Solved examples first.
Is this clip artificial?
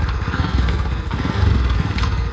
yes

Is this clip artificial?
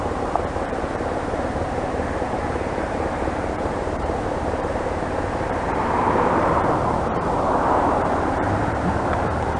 yes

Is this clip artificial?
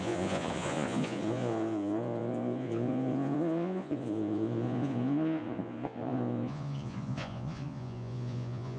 yes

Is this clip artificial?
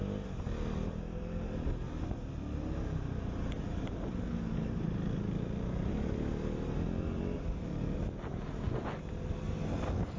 no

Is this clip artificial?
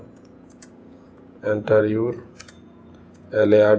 yes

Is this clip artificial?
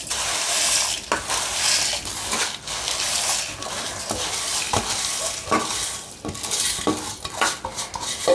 no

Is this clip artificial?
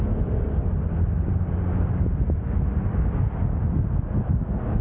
no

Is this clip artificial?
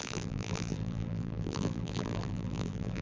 yes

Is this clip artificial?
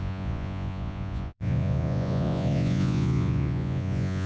yes